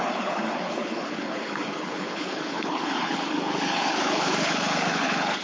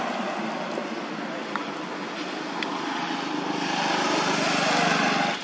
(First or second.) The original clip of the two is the second